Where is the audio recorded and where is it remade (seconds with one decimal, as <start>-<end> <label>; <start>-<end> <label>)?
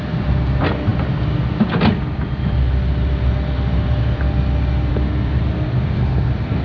0.0-6.6 recorded